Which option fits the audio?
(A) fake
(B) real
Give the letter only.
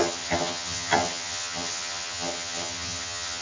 A